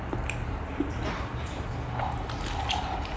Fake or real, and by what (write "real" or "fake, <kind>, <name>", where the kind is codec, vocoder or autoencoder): real